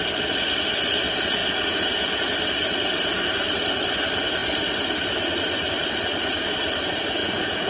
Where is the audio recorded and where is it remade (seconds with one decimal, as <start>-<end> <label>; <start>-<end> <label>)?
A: 0.0-1.4 recorded; 1.4-2.2 remade; 2.2-7.2 recorded; 7.2-7.7 remade